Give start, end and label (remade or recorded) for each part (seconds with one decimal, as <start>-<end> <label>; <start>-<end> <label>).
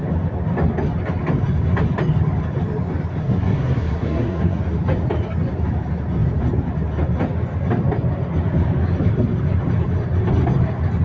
0.0-3.2 recorded; 3.2-4.6 remade; 4.6-11.0 recorded